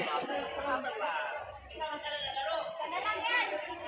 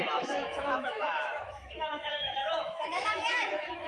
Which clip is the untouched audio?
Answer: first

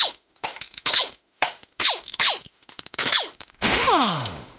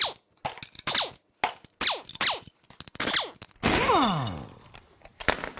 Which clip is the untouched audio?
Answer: second